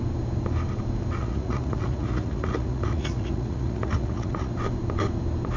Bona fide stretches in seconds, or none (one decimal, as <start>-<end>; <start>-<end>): 0.0-1.2; 4.5-5.6